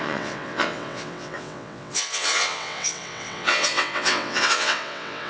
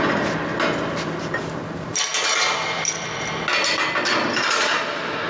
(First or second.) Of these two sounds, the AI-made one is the first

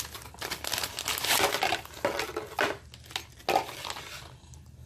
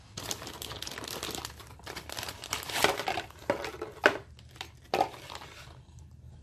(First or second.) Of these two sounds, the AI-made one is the second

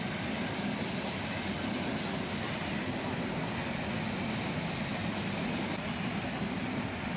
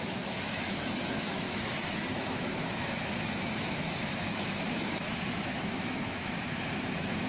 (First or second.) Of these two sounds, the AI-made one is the second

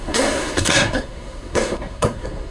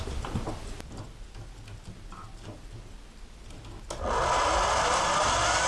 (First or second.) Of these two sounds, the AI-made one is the first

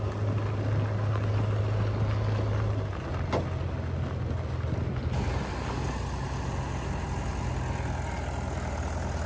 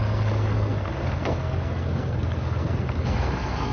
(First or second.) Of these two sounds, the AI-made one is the second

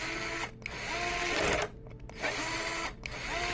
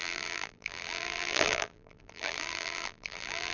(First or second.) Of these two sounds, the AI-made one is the second